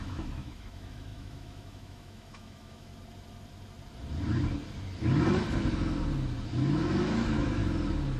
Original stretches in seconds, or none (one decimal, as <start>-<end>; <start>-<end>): 2.9-7.0; 7.6-8.2